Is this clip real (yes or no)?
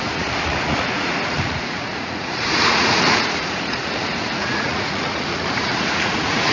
no